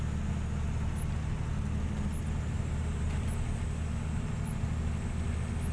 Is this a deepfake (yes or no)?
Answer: no